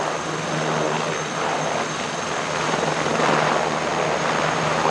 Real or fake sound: real